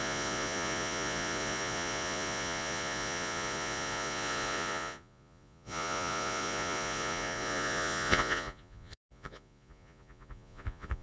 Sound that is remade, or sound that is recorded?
remade